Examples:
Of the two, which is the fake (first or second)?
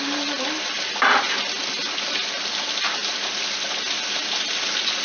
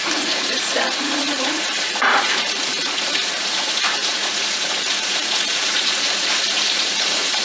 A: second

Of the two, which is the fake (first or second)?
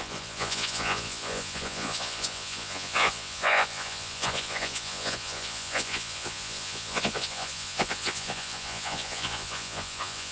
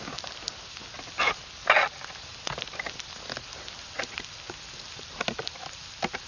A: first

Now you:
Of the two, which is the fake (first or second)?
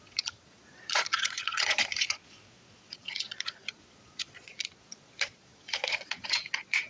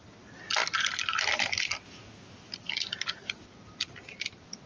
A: first